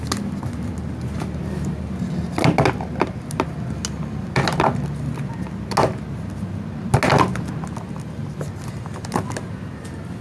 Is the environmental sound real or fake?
real